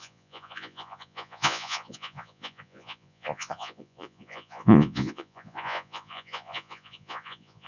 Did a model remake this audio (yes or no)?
yes